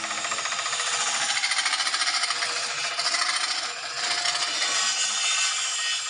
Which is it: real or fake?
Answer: real